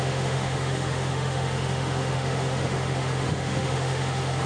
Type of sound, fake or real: fake